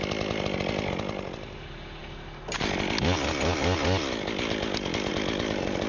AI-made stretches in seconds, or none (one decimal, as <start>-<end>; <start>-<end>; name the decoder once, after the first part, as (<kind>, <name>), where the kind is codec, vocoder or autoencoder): none